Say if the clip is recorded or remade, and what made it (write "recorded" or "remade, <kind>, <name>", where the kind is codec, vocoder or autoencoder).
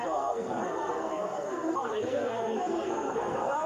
remade, codec, SNAC